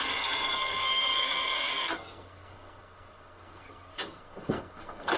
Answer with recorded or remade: remade